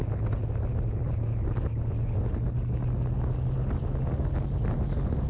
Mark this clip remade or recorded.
recorded